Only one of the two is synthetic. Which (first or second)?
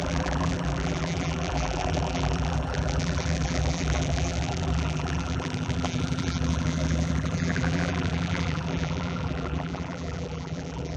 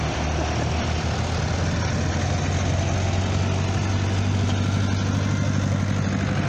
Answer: first